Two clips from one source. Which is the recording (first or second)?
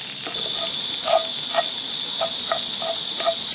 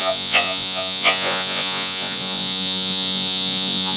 first